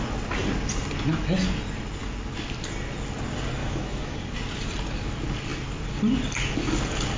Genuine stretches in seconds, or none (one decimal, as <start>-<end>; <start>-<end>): 0.0-3.6; 4.2-7.2